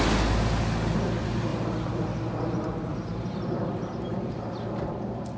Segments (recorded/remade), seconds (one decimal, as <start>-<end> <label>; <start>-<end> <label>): 0.0-1.5 recorded; 1.5-2.2 remade; 2.2-2.9 recorded; 2.9-5.4 remade